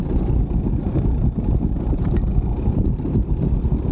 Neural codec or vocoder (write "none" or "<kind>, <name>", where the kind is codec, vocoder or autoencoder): none